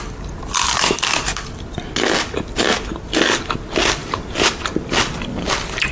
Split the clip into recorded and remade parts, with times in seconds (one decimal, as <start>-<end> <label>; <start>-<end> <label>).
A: 0.0-4.0 recorded; 4.0-4.6 remade; 4.6-5.9 recorded